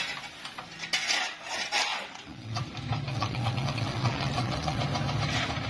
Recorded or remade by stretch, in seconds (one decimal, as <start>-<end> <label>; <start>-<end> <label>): 0.0-1.9 recorded; 1.9-2.6 remade; 2.6-3.1 recorded; 3.1-4.8 remade; 4.8-5.7 recorded